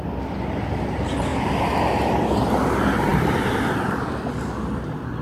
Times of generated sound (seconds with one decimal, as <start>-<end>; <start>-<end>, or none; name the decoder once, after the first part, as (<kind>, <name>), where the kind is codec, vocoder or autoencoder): none